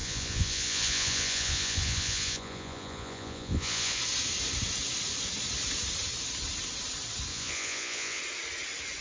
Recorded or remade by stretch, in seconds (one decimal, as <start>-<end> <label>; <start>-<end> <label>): 0.0-4.0 remade; 4.0-7.3 recorded; 7.3-8.2 remade; 8.2-9.0 recorded